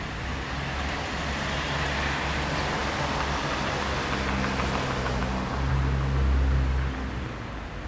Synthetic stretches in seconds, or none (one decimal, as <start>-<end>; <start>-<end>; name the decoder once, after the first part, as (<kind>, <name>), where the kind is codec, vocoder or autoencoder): none